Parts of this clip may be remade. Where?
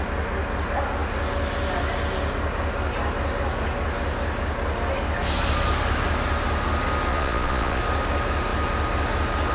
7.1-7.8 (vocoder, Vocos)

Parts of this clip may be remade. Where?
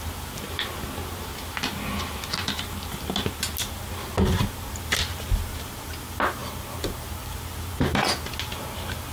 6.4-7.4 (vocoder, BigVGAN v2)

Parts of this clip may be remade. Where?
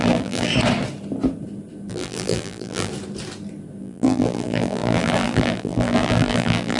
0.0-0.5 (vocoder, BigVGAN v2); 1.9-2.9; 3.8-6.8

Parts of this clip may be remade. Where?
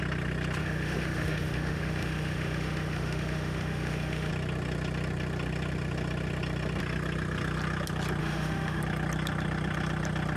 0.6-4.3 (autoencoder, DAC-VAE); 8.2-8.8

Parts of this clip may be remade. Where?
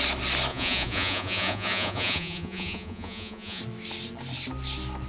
0.5-3.6 (vocoder, Vocos)